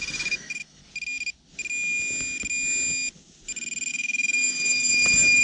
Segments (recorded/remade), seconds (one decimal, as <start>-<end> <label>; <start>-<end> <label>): 0.0-0.8 remade; 0.8-3.9 recorded; 3.9-5.4 remade